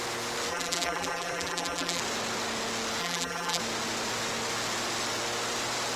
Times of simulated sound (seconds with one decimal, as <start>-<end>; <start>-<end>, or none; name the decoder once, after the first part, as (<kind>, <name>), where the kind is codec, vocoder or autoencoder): 0.5-2.0 (vocoder, BigVGAN v2); 3.0-3.6